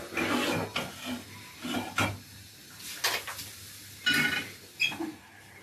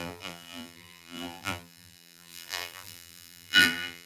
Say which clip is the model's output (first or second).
second